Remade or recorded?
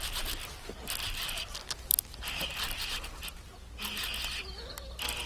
recorded